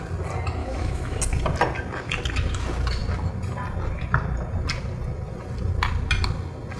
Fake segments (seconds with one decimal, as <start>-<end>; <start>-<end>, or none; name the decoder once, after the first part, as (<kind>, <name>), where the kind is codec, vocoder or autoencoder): 0.6-1.2 (autoencoder, DAC-VAE)